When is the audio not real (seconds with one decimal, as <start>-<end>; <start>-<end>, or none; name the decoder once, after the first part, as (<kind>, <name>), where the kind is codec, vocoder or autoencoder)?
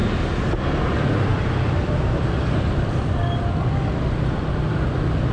1.3-4.5 (vocoder, BigVGAN v2)